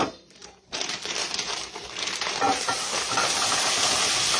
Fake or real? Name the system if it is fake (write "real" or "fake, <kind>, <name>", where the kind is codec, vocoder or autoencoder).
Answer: fake, vocoder, BigVGAN v2